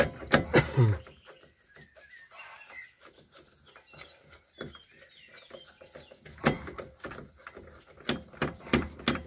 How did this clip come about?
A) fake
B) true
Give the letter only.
B